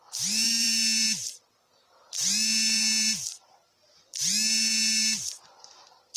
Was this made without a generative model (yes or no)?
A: no